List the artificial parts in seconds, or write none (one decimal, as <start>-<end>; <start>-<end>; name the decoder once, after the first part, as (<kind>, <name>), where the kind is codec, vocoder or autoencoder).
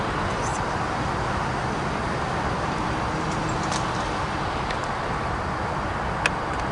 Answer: none